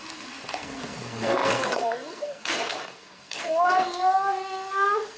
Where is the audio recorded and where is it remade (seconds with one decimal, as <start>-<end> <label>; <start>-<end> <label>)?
0.0-5.2 remade